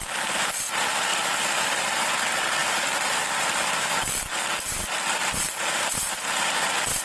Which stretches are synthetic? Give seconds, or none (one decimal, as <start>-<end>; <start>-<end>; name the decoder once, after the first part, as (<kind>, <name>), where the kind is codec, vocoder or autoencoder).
0.0-0.6 (vocoder, BigVGAN v2); 1.1-2.1; 2.6-5.9